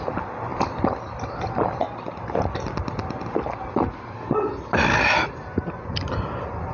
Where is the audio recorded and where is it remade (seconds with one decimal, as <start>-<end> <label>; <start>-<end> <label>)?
0.0-6.7 recorded